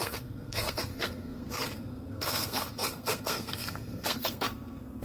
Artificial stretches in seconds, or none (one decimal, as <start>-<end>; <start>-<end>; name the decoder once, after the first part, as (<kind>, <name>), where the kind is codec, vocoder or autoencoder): 0.0-5.0 (codec, SNAC)